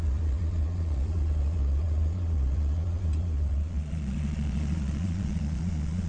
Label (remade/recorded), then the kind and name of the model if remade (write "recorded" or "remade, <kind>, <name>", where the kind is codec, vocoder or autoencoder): remade, vocoder, Vocos